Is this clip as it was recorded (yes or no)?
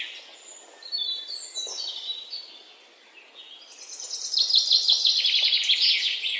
yes